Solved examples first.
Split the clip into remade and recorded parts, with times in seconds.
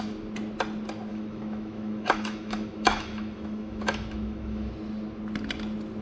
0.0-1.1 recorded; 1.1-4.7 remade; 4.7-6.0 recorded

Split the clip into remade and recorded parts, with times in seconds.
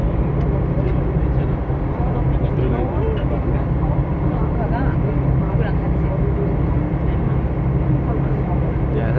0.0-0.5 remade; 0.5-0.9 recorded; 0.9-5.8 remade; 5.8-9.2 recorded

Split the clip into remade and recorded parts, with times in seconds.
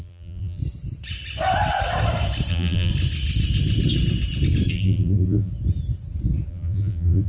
0.0-0.6 remade; 0.6-2.5 recorded; 2.5-2.9 remade; 2.9-4.7 recorded; 4.7-5.5 remade; 5.5-6.5 recorded; 6.5-7.3 remade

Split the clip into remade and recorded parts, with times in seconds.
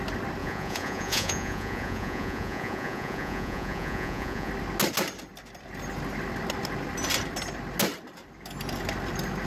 0.0-0.4 recorded; 0.4-4.5 remade; 4.5-9.5 recorded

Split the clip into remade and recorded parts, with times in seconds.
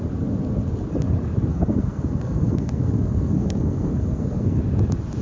0.0-1.5 recorded; 1.5-4.6 remade; 4.6-5.2 recorded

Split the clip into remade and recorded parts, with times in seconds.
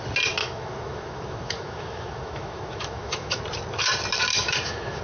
0.0-0.4 recorded; 0.4-3.4 remade; 3.4-4.3 recorded; 4.3-5.0 remade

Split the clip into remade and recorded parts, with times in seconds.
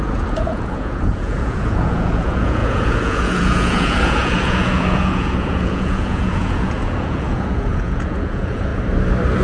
0.0-8.7 remade; 8.7-9.4 recorded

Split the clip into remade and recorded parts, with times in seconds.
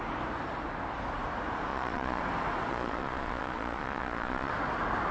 0.0-1.7 recorded; 1.7-2.2 remade; 2.2-2.7 recorded; 2.7-4.5 remade; 4.5-5.1 recorded